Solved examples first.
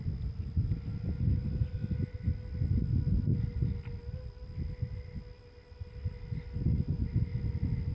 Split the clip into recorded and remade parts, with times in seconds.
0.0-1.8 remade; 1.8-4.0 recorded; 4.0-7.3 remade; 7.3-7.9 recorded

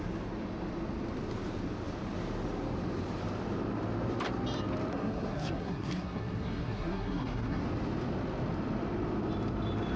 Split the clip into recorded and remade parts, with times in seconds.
0.0-4.9 recorded; 4.9-7.6 remade; 7.6-10.0 recorded

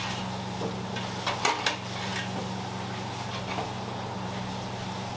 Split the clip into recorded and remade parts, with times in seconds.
0.0-5.2 recorded

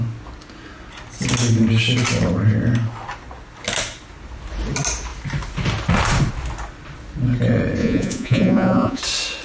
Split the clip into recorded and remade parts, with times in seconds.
0.0-7.8 recorded; 7.8-9.0 remade; 9.0-9.4 recorded

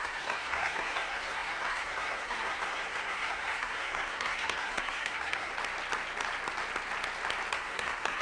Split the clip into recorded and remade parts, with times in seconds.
0.0-5.5 remade; 5.5-7.5 recorded; 7.5-8.2 remade

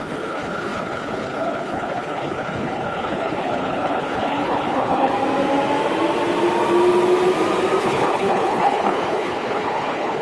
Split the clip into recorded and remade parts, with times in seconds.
0.0-5.1 remade; 5.1-7.8 recorded; 7.8-10.2 remade